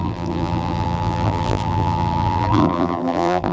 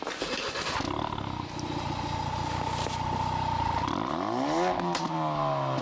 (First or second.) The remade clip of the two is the first